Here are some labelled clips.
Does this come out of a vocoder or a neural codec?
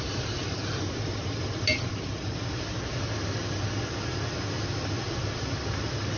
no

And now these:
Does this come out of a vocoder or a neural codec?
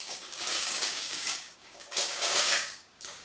yes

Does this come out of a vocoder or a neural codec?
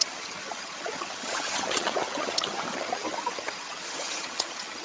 yes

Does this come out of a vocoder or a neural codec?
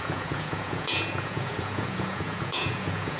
yes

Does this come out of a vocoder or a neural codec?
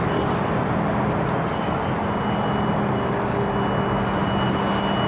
no